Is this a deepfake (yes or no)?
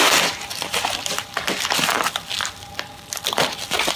yes